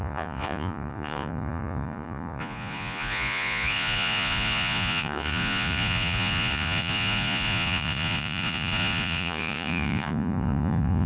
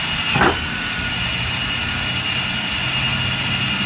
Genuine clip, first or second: second